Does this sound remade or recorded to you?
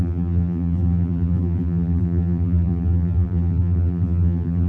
remade